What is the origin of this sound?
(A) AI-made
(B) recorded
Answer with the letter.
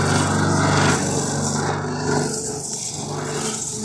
B